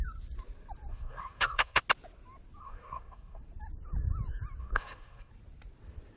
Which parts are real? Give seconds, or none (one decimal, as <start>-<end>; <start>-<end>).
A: 0.0-0.9; 1.8-2.6; 3.4-4.6; 5.3-6.2